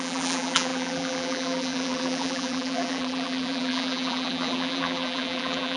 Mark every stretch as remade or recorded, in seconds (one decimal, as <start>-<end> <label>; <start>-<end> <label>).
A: 0.0-5.8 remade